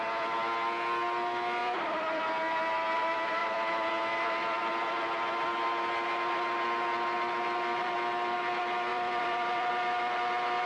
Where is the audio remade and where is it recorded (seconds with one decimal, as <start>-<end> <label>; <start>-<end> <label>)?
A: 0.0-1.6 recorded; 1.6-2.2 remade; 2.2-3.4 recorded; 3.4-4.0 remade; 4.0-8.9 recorded; 8.9-9.7 remade; 9.7-10.7 recorded